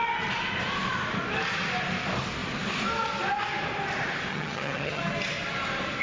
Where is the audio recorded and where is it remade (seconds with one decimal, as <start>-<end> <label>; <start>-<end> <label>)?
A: 0.0-4.3 recorded; 4.3-5.0 remade; 5.0-6.0 recorded